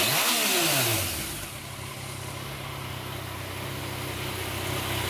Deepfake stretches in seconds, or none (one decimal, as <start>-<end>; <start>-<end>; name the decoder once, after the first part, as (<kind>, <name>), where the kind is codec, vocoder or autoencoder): none

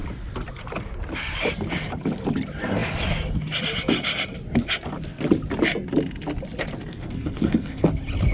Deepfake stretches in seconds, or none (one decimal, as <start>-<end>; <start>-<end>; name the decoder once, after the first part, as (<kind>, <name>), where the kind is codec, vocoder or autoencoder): 6.9-7.9 (codec, SNAC)

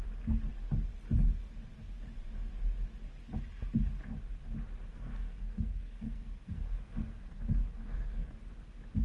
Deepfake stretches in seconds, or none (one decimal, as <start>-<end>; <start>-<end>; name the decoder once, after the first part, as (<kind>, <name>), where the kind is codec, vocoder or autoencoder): 4.9-8.3 (codec, SNAC)